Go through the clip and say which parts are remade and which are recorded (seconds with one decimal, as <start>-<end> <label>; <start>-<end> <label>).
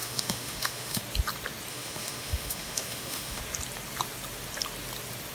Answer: 0.0-1.0 remade; 1.0-1.7 recorded; 1.7-3.4 remade; 3.4-5.3 recorded